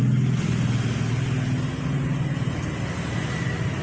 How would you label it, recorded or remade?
recorded